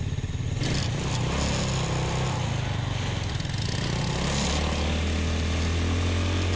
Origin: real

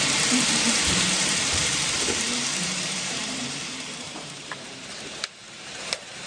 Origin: fake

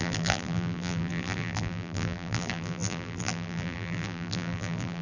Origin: fake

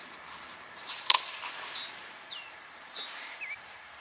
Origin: fake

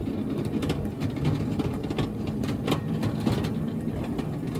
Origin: real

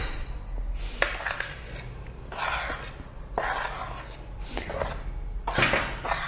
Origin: real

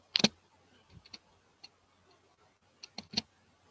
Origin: real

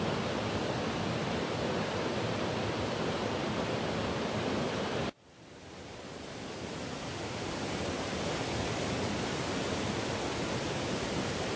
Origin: fake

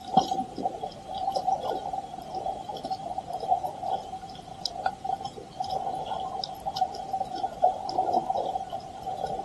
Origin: real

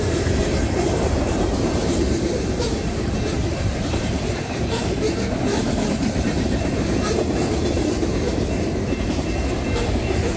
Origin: fake